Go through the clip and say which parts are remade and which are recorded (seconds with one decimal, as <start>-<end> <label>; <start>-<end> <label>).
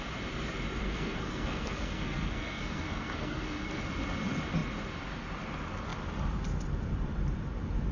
0.0-0.8 recorded; 0.8-3.8 remade; 3.8-7.9 recorded